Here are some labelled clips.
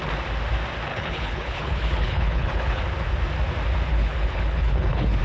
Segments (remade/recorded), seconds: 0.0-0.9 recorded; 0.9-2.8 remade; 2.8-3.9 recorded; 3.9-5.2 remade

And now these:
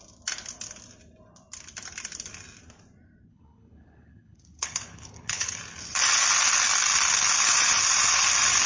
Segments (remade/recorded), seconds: 0.0-3.3 recorded; 3.3-5.6 remade; 5.6-8.7 recorded

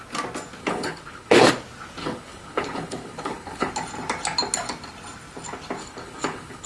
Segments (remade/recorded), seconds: 0.0-0.6 recorded; 0.6-1.5 remade; 1.5-2.0 recorded; 2.0-3.7 remade; 3.7-5.8 recorded; 5.8-6.7 remade